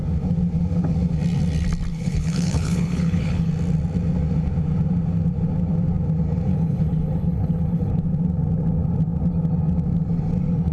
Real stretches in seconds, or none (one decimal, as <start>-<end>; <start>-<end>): 0.0-1.9; 3.5-6.5; 7.9-10.7